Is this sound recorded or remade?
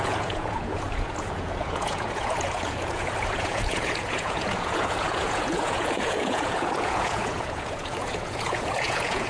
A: remade